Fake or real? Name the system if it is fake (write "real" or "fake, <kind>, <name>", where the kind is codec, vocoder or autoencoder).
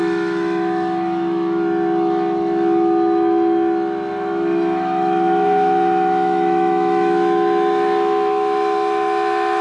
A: fake, autoencoder, DAC-VAE